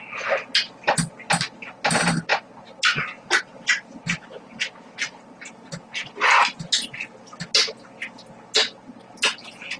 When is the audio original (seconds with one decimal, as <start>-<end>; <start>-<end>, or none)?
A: 0.0-9.8